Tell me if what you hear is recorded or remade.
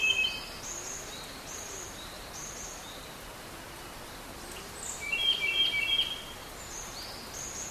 recorded